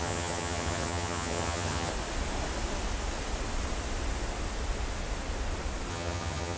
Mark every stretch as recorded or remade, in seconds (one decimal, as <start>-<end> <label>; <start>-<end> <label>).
0.0-1.9 remade; 1.9-5.9 recorded; 5.9-6.6 remade